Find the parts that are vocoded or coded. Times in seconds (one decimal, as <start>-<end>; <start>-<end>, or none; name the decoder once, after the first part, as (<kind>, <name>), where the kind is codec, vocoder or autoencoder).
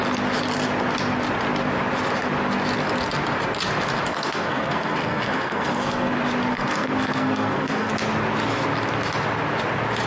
4.1-6.1 (codec, SNAC); 6.5-7.9